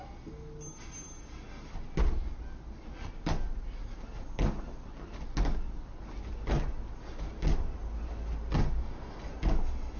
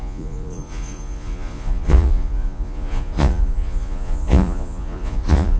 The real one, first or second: first